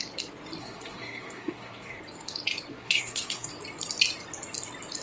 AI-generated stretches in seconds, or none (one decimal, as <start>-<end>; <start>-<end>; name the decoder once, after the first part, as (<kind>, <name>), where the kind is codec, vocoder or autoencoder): 0.6-2.0 (codec, SNAC); 2.7-3.5